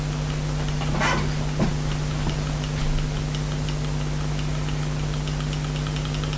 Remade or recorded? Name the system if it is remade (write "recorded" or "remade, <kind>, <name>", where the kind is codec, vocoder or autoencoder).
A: recorded